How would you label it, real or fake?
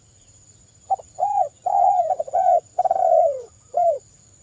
fake